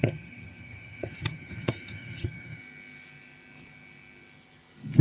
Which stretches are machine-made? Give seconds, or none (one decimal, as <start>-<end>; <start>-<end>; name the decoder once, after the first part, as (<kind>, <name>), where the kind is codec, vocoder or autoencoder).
0.0-2.6 (vocoder, HiFi-GAN)